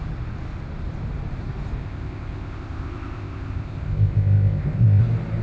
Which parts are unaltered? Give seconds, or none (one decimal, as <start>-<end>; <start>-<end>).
0.0-1.8; 5.0-5.4